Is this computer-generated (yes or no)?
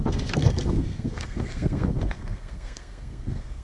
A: yes